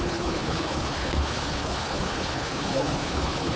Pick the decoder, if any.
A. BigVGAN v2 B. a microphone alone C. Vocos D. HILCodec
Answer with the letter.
D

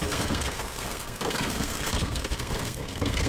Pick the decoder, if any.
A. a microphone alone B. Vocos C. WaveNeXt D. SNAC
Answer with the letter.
D